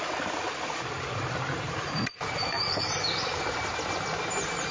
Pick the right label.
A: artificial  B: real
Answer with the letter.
B